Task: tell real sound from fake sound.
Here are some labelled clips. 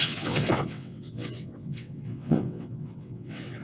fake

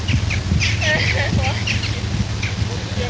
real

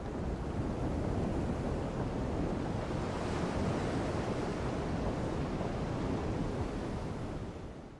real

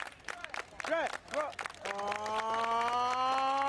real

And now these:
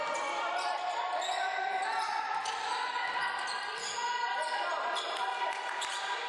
fake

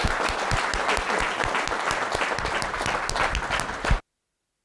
real